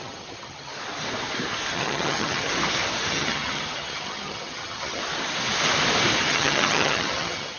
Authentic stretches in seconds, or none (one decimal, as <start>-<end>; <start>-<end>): 0.7-1.7; 2.5-3.1; 5.0-6.3